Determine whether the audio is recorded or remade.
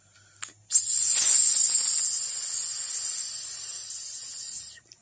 recorded